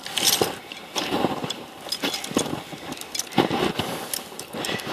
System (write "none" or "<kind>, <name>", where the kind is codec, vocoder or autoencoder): none